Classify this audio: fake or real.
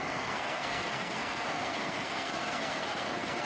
fake